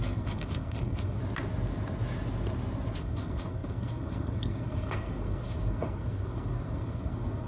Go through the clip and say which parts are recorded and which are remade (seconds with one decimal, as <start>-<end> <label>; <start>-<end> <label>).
0.0-1.2 remade; 1.2-3.0 recorded; 3.0-7.5 remade